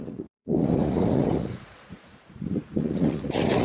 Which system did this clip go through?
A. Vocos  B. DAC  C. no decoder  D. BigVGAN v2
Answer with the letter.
A